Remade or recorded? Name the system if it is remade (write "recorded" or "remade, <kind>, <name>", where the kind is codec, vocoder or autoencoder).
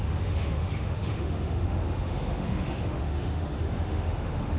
remade, autoencoder, DAC-VAE